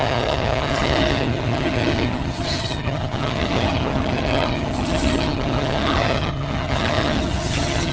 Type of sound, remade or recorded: remade